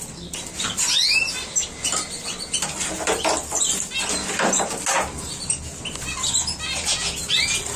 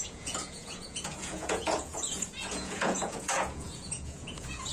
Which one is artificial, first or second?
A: second